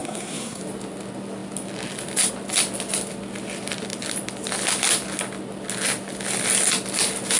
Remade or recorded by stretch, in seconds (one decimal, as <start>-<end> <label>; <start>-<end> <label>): 0.0-0.6 remade; 0.6-7.4 recorded